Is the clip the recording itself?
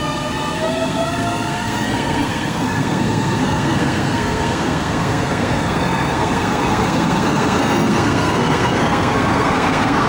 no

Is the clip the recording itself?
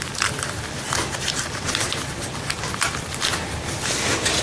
no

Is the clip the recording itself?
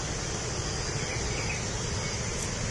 yes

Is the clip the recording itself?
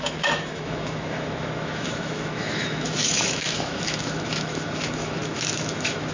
no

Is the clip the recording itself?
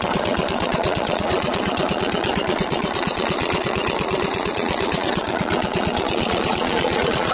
no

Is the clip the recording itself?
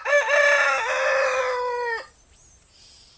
yes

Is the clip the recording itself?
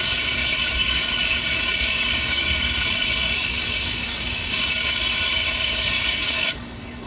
no